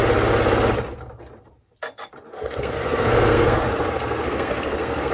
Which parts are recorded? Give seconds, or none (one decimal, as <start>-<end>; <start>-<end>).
0.0-2.3